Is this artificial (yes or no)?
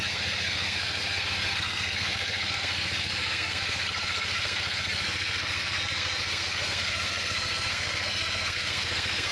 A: yes